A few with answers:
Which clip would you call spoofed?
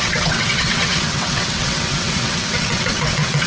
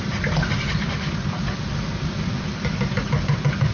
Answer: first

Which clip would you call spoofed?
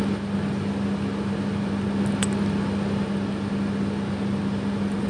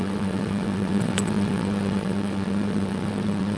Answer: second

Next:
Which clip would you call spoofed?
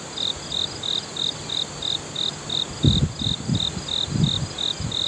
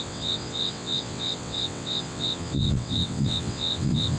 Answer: second